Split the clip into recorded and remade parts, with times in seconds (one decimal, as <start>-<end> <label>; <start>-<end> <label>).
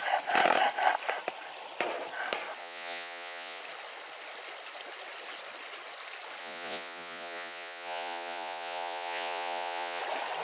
0.0-2.6 recorded; 2.6-3.6 remade; 3.6-6.4 recorded; 6.4-10.0 remade; 10.0-10.4 recorded